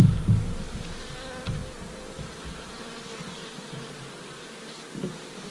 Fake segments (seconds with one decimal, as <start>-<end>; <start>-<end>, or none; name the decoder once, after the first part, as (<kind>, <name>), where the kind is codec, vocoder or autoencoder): none